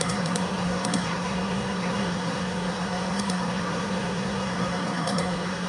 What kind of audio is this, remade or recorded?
remade